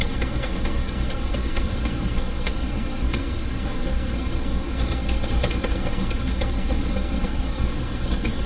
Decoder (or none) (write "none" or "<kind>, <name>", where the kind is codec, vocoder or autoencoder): codec, SNAC